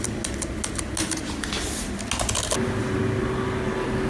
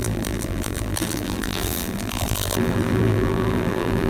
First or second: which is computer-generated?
second